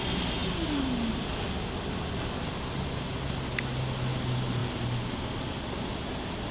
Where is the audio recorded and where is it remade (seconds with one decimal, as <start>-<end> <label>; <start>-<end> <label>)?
0.0-4.6 recorded; 4.6-6.0 remade; 6.0-6.5 recorded